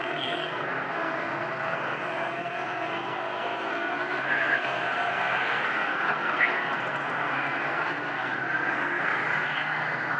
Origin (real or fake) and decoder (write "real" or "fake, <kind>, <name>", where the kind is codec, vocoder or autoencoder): fake, codec, SNAC